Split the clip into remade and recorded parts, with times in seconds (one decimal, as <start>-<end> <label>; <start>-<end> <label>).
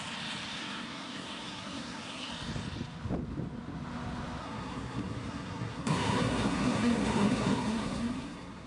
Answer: 0.0-0.6 recorded; 0.6-2.3 remade; 2.3-4.4 recorded; 4.4-8.7 remade